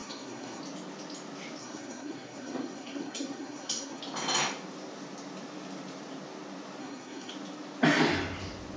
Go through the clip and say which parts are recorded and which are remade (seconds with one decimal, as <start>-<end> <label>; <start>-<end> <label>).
0.0-0.6 remade; 0.6-1.6 recorded; 1.6-4.0 remade; 4.0-6.8 recorded; 6.8-7.3 remade; 7.3-8.8 recorded